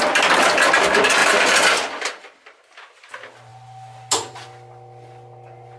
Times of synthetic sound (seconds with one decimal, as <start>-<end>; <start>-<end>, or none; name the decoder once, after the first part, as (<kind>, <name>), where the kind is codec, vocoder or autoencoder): 1.2-3.1 (vocoder, BigVGAN v2)